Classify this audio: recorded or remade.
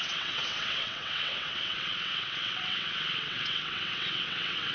remade